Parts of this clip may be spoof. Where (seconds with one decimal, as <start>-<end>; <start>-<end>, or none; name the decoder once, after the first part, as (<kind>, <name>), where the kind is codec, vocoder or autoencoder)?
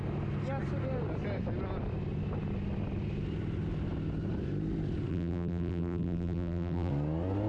5.1-6.9 (vocoder, BigVGAN v2)